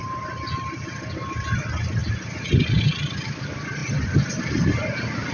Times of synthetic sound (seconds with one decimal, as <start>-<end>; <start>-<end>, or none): none